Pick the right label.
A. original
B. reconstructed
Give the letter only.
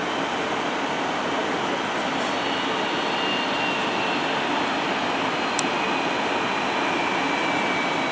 A